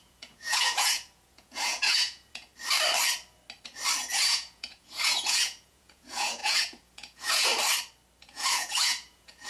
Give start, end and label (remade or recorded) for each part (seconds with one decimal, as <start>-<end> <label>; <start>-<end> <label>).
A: 0.0-2.5 remade; 2.5-4.0 recorded; 4.0-7.5 remade; 7.5-8.2 recorded; 8.2-9.5 remade